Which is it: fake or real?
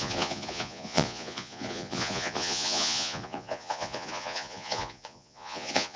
fake